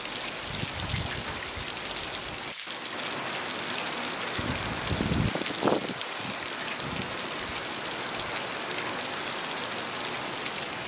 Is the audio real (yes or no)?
yes